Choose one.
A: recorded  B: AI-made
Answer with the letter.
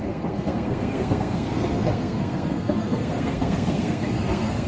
B